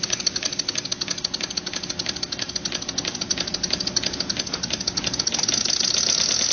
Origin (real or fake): real